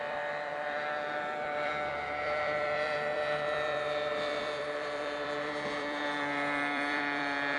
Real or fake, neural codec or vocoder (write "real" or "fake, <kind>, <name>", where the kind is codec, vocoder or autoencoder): fake, vocoder, BigVGAN v2